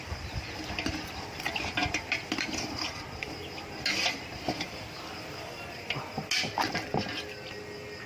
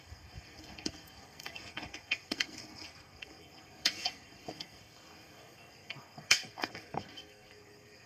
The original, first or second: first